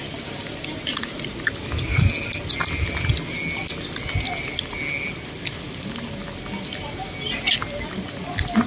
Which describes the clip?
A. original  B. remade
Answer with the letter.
A